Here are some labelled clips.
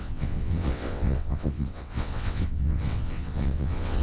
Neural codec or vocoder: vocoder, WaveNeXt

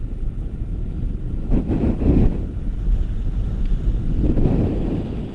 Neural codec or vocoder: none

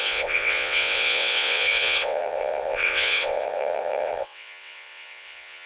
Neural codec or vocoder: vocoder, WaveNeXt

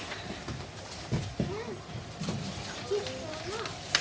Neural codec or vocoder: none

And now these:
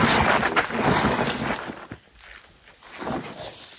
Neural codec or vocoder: none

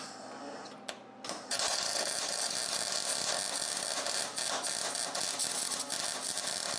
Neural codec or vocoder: none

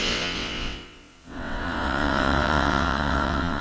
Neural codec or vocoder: vocoder, WaveNeXt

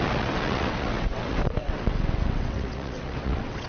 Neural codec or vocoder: vocoder, WaveNeXt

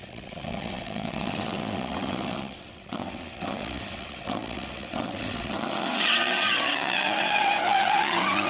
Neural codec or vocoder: vocoder, WaveNeXt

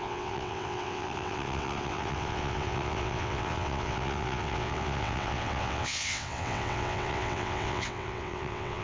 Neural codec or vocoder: vocoder, WaveNeXt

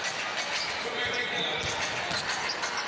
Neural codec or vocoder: none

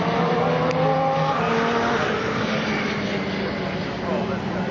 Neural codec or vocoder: none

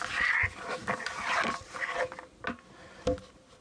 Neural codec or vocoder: none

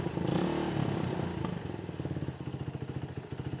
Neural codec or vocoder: none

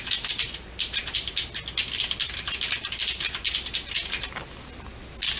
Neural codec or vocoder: none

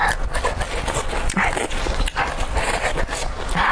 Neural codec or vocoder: none